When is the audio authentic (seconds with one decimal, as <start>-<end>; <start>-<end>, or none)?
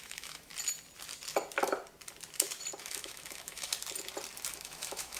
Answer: 0.5-2.8; 3.7-4.5